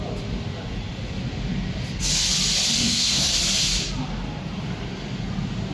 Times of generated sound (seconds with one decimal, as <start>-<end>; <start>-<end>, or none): 2.8-3.3